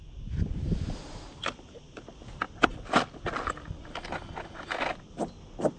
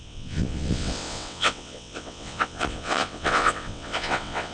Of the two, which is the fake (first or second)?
second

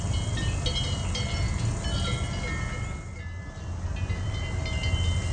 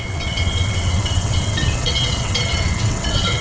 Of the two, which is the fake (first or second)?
second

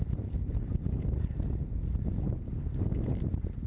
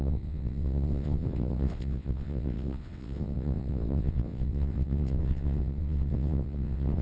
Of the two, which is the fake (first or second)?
second